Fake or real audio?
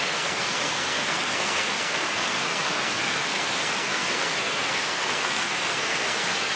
fake